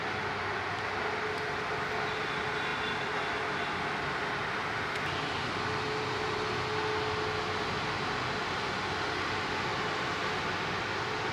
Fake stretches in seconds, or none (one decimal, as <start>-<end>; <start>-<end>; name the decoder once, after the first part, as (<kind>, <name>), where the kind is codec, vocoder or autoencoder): none